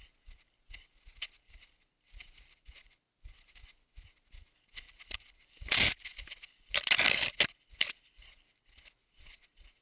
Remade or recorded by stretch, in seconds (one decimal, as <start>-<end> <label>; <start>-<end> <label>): 0.0-9.0 recorded; 9.0-9.8 remade